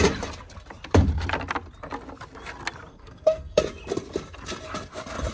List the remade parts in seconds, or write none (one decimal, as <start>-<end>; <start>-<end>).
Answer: 2.9-3.6